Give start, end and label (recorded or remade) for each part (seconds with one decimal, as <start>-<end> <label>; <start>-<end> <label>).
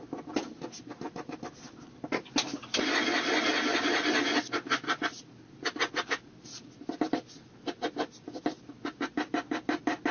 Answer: 0.0-10.1 recorded